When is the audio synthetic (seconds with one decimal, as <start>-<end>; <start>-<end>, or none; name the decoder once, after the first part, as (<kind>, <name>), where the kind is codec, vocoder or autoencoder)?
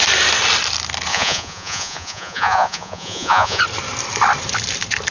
1.1-3.6 (vocoder, Vocos)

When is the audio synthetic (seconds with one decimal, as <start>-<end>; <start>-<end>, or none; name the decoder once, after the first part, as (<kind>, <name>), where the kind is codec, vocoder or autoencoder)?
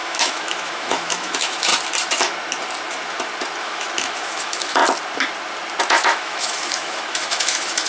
0.0-1.7 (autoencoder, DAC-VAE); 3.6-4.8; 5.8-7.9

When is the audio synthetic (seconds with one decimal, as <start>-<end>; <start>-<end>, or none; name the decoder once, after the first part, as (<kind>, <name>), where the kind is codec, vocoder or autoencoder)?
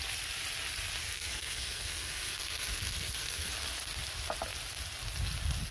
1.0-3.5 (codec, SNAC)